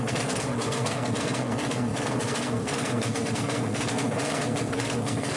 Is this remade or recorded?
remade